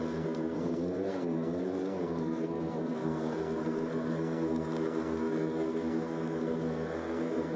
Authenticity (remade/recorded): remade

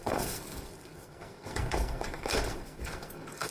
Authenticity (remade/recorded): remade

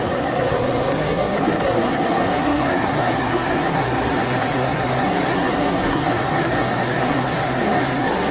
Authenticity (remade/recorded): remade